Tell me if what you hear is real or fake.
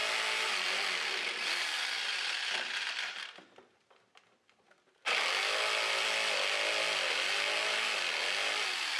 real